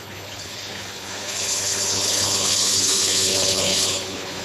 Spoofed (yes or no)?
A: yes